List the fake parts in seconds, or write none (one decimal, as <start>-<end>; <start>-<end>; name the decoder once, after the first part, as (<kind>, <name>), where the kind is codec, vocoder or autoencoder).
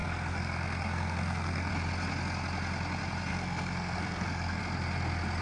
0.0-1.7 (codec, SNAC); 3.3-4.6